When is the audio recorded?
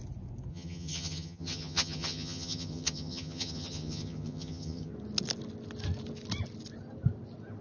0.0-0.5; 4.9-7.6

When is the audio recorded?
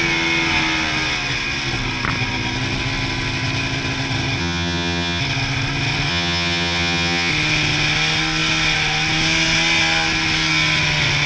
0.0-4.4; 5.2-6.1; 7.3-11.3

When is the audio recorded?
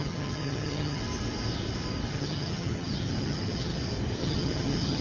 1.0-2.1; 3.8-4.2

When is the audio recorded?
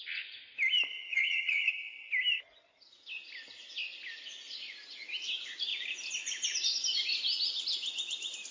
0.0-1.1; 1.7-8.5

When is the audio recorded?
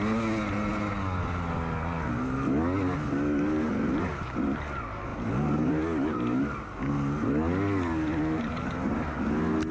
0.0-9.7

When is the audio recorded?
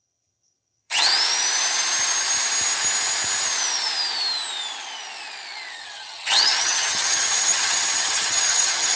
1.1-5.7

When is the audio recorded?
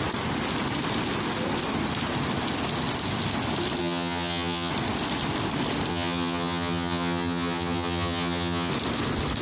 0.0-3.8; 4.7-5.9; 8.7-9.4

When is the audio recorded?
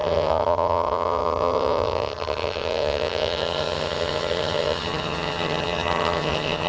none